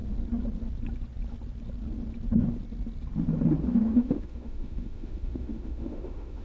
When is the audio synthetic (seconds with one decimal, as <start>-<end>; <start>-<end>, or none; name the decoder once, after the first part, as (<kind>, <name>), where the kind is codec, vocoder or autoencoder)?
3.6-6.4 (autoencoder, DAC-VAE)